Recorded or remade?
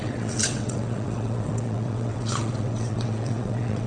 remade